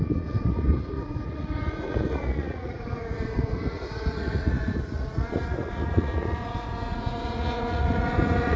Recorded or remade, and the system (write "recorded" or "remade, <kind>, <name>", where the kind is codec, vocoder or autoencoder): remade, vocoder, Vocos